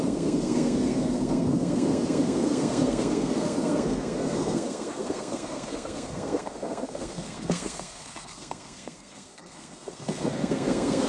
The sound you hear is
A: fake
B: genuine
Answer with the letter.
A